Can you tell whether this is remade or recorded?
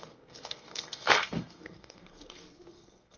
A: remade